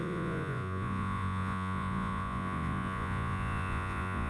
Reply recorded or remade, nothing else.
remade